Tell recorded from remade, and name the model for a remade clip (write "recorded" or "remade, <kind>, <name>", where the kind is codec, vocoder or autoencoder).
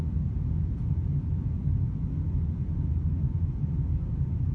remade, vocoder, Vocos